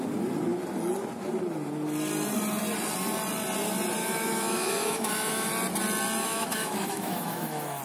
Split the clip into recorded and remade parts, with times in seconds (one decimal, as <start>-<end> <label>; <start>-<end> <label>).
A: 0.0-4.0 recorded; 4.0-5.5 remade; 5.5-6.2 recorded; 6.2-7.8 remade